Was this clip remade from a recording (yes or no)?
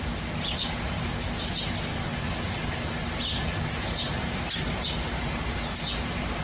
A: no